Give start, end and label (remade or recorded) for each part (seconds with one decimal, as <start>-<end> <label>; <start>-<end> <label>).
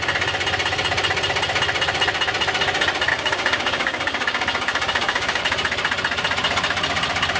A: 0.0-3.1 recorded; 3.1-5.4 remade; 5.4-7.4 recorded